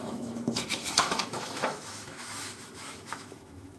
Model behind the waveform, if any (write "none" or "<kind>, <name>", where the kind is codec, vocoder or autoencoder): autoencoder, DAC-VAE